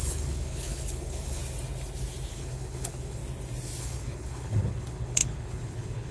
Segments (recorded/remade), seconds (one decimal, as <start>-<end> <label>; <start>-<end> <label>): 0.0-1.4 remade; 1.4-2.3 recorded; 2.3-3.2 remade; 3.2-3.8 recorded; 3.8-6.1 remade